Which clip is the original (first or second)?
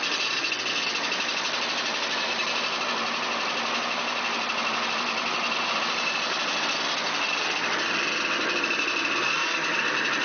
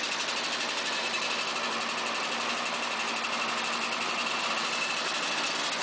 second